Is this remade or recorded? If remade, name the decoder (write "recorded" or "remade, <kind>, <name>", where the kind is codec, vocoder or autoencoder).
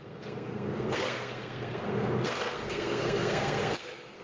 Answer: remade, codec, SNAC